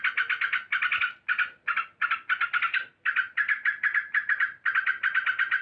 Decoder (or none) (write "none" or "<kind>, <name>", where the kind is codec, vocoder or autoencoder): none